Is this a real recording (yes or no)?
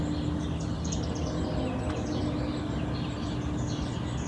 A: yes